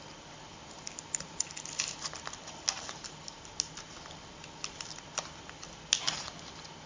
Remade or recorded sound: recorded